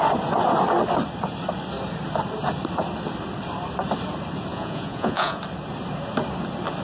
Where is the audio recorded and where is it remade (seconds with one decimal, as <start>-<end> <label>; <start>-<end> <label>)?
0.0-4.5 recorded; 4.5-5.4 remade; 5.4-6.8 recorded

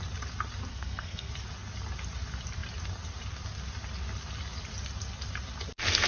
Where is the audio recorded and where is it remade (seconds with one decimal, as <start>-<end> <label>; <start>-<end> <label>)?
0.0-0.7 recorded; 0.7-1.3 remade; 1.3-6.1 recorded

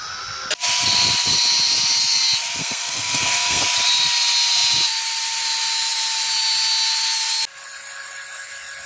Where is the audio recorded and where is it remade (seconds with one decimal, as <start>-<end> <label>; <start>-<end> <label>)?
0.0-2.6 recorded; 2.6-3.6 remade; 3.6-8.9 recorded

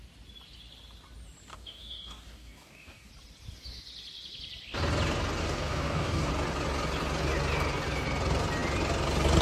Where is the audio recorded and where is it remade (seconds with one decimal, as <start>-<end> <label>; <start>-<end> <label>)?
0.0-1.5 recorded; 1.5-3.1 remade; 3.1-5.4 recorded; 5.4-6.3 remade; 6.3-9.4 recorded

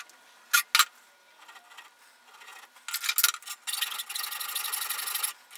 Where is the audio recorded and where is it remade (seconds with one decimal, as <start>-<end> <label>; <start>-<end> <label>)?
0.0-5.6 recorded

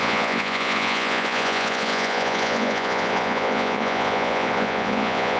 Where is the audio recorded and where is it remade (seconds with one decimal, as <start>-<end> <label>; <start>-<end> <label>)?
0.0-5.4 remade